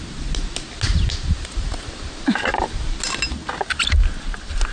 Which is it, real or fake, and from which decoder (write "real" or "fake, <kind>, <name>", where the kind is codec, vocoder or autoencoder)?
real